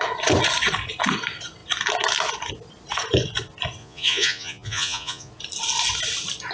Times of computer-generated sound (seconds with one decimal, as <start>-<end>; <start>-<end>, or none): 3.8-5.3